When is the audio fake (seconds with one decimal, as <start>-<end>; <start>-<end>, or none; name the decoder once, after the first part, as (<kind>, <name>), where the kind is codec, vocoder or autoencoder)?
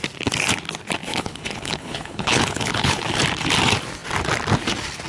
1.1-3.0 (codec, HILCodec)